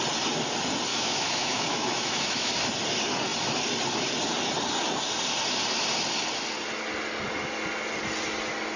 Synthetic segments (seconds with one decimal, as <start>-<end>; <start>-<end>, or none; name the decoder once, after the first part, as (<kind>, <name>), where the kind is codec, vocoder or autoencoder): 0.9-2.5 (autoencoder, DAC-VAE)